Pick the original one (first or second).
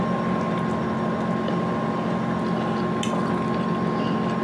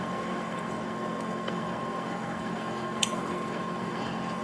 first